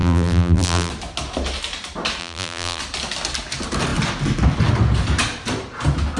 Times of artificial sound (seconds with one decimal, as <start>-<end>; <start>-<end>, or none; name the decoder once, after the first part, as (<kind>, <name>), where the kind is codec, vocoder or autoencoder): 0.0-0.9 (vocoder, BigVGAN v2); 2.2-2.8